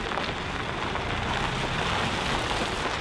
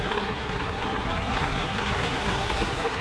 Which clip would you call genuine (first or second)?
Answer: first